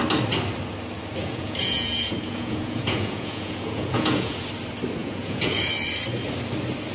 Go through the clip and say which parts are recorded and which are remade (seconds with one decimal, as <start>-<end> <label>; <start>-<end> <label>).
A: 0.0-1.2 recorded; 1.2-4.4 remade; 4.4-5.0 recorded; 5.0-5.6 remade; 5.6-6.9 recorded